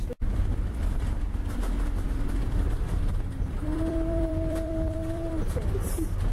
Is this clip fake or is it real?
fake